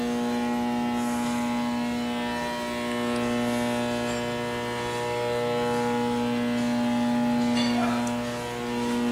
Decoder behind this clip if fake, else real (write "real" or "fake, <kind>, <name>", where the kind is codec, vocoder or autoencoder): real